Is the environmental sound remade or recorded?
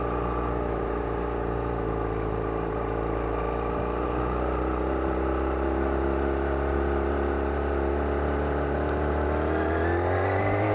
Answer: recorded